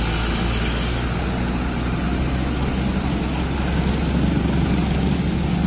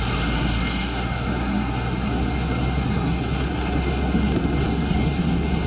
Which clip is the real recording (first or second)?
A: first